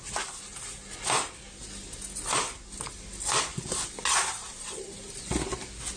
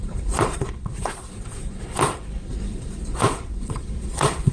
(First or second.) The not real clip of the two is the second